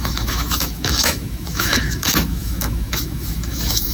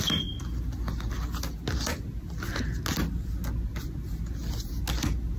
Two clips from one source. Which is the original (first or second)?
second